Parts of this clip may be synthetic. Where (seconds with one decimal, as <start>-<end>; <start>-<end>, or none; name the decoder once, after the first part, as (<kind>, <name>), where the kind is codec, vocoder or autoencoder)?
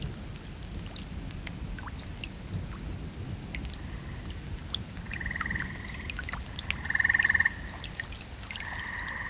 none